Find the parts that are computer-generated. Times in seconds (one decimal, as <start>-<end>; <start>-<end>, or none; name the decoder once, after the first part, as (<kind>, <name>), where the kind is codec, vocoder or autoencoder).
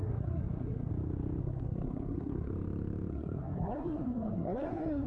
0.0-0.9 (codec, SNAC); 1.4-2.5; 3.1-5.1